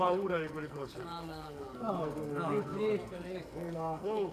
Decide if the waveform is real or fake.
fake